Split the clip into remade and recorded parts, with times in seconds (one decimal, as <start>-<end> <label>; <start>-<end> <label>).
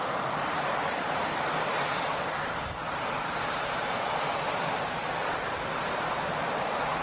0.0-7.0 remade